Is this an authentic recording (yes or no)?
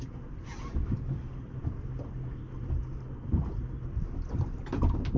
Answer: yes